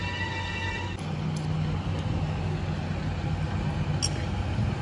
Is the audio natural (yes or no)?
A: yes